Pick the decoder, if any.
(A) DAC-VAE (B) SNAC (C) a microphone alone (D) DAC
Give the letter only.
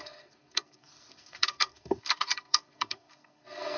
B